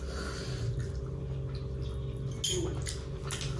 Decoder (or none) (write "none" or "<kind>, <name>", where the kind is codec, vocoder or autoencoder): none